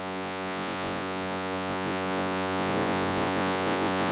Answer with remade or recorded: remade